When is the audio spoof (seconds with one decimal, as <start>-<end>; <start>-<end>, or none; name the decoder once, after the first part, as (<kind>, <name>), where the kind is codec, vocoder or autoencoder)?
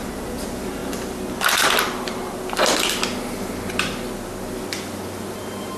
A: none